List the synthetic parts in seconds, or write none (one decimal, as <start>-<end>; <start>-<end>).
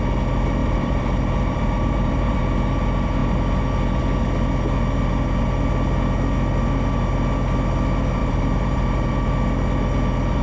0.6-2.4; 8.2-9.3